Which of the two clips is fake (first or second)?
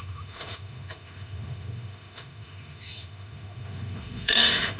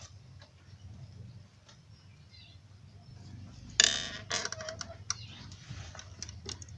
first